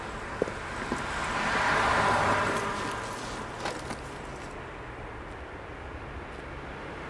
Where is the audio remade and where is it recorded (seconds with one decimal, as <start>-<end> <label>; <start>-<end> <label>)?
0.0-7.1 recorded